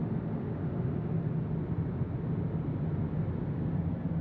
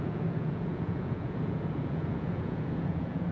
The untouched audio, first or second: first